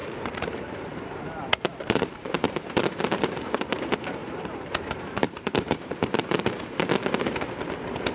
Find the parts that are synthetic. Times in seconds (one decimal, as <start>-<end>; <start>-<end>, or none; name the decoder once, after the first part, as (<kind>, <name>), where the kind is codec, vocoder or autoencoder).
0.0-3.8 (vocoder, BigVGAN v2); 4.2-6.9